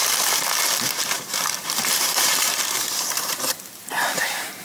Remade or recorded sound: remade